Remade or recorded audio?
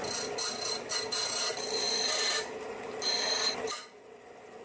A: recorded